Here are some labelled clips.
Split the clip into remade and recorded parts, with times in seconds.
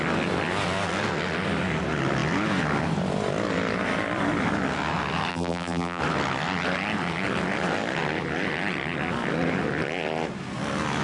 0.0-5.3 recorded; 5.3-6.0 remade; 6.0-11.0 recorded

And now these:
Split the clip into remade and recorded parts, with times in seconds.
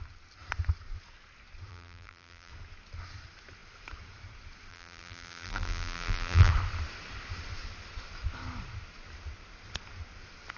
0.0-1.7 recorded; 1.7-2.5 remade; 2.5-4.7 recorded; 4.7-6.5 remade; 6.5-10.6 recorded